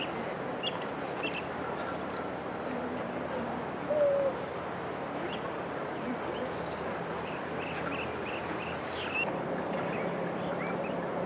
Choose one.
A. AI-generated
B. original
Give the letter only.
B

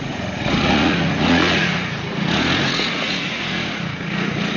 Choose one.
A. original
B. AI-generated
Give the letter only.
B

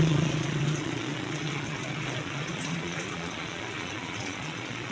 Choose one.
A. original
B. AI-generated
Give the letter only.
B